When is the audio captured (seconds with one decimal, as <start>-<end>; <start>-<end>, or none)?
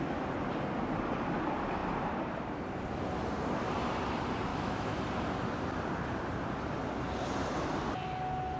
0.0-4.5; 5.0-8.6